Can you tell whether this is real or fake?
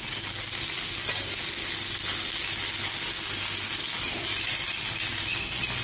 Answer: real